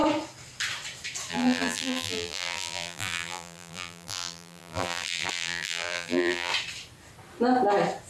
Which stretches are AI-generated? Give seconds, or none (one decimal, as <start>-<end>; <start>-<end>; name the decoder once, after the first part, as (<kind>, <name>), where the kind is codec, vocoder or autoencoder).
1.3-6.5 (vocoder, BigVGAN v2)